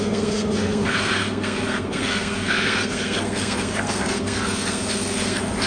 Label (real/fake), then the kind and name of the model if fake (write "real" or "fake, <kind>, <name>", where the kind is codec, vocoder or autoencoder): fake, codec, SNAC